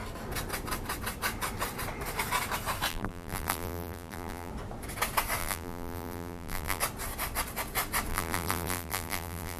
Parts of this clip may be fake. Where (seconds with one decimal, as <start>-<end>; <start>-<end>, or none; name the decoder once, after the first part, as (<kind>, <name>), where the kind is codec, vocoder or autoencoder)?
2.9-4.5 (vocoder, BigVGAN v2); 5.4-6.8; 8.1-9.6